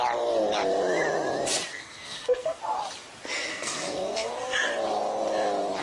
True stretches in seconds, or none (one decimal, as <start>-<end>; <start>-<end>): 0.0-1.7; 2.6-3.5; 4.3-5.8